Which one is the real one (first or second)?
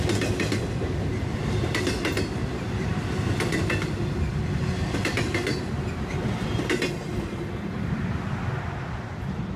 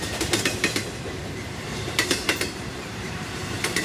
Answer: first